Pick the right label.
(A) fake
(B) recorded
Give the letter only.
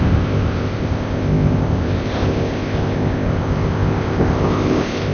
A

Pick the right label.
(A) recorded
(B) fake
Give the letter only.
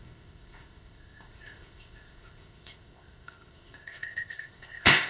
B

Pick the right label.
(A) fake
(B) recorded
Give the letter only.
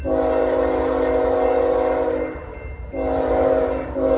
B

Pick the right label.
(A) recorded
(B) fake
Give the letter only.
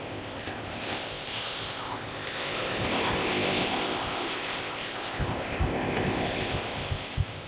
B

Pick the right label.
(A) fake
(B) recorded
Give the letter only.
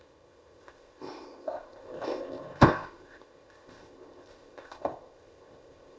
A